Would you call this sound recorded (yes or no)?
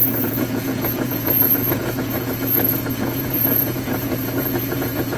no